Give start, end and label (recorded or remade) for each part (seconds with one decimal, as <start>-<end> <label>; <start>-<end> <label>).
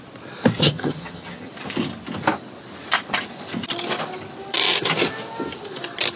0.0-0.6 recorded; 0.6-1.5 remade; 1.5-6.2 recorded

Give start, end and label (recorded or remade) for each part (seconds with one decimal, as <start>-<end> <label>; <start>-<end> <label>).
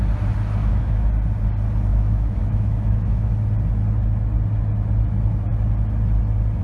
0.0-0.6 recorded; 0.6-1.1 remade; 1.1-1.9 recorded; 1.9-3.3 remade; 3.3-6.6 recorded